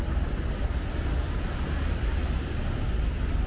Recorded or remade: recorded